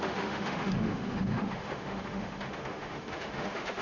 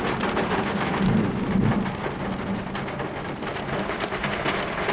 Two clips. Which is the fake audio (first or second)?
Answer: first